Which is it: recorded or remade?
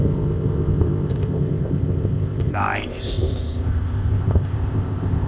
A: remade